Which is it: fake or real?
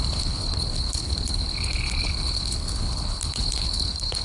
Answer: fake